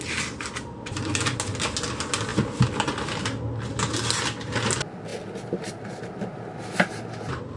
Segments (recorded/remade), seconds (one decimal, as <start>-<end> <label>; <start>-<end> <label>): 0.0-7.6 recorded

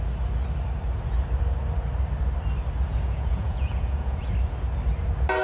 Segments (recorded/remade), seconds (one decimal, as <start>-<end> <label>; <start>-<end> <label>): 0.0-2.9 recorded; 2.9-4.3 remade; 4.3-5.4 recorded

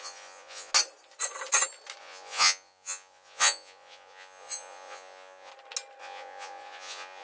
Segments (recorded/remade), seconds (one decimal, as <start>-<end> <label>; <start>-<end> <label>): 0.0-0.7 remade; 0.7-2.0 recorded; 2.0-5.5 remade; 5.5-6.0 recorded; 6.0-7.2 remade

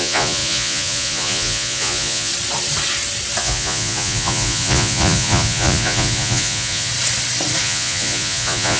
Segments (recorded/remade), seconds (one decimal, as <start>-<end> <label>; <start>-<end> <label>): 0.0-2.3 remade; 2.3-3.4 recorded; 3.4-6.9 remade; 6.9-7.6 recorded; 7.6-8.8 remade

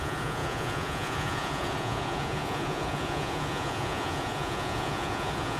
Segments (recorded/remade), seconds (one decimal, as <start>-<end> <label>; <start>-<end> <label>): 0.0-5.6 remade

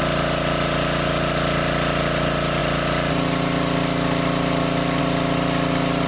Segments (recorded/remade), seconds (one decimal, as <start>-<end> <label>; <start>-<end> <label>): 0.0-6.1 recorded

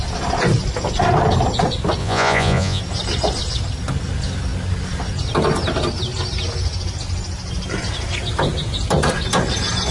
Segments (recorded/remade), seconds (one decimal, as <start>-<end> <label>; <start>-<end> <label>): 0.0-2.0 recorded; 2.0-2.8 remade; 2.8-9.9 recorded

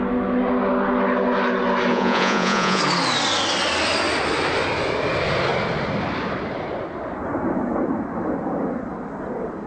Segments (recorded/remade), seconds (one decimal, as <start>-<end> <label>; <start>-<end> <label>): 0.0-1.9 recorded; 1.9-2.8 remade; 2.8-9.7 recorded